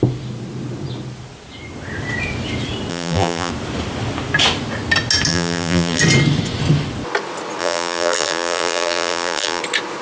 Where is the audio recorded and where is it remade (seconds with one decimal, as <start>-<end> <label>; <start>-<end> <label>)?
0.0-2.9 recorded; 2.9-3.5 remade; 3.5-5.3 recorded; 5.3-6.0 remade; 6.0-7.6 recorded; 7.6-9.6 remade; 9.6-10.0 recorded